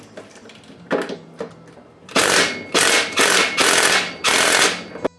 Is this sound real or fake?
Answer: real